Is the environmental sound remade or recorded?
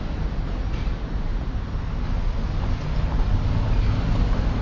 recorded